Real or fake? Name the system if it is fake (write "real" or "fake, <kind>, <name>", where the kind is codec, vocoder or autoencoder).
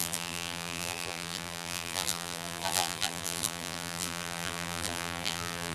fake, vocoder, BigVGAN v2